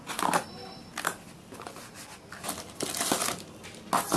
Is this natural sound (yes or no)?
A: yes